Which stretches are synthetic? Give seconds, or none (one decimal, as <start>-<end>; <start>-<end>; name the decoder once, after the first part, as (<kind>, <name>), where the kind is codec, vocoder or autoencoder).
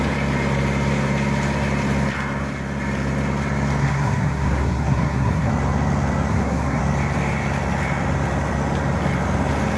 3.8-5.5 (codec, SNAC); 6.3-6.8